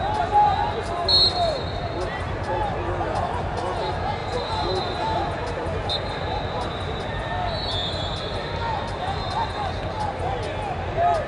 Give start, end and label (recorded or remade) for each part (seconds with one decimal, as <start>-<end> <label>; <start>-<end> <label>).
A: 0.0-1.1 recorded; 1.1-3.3 remade; 3.3-4.2 recorded; 4.2-7.0 remade; 7.0-7.8 recorded; 7.8-10.0 remade; 10.0-11.3 recorded